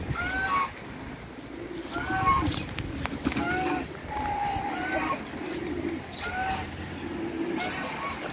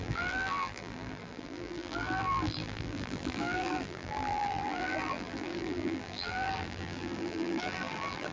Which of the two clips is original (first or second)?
first